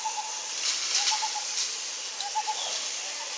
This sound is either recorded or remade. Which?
recorded